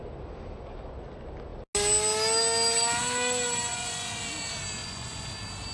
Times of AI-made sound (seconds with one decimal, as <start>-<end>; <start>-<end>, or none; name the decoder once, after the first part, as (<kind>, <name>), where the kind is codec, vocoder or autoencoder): 3.7-4.2 (vocoder, Vocos); 4.8-5.3